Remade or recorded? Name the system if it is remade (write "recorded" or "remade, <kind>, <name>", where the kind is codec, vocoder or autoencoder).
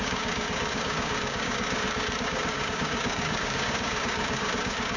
remade, codec, DAC